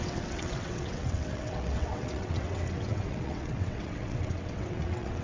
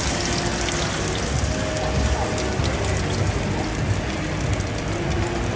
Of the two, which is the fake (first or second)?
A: first